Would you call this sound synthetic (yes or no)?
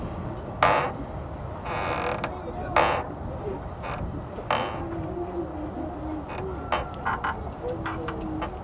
no